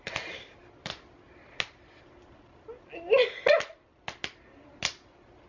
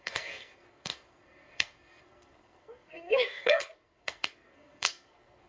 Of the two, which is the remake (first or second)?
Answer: second